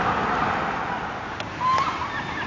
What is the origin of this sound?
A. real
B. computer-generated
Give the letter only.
A